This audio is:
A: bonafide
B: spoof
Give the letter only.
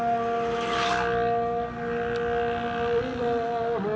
A